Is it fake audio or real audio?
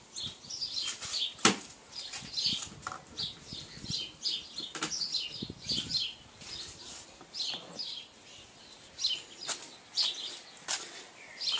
real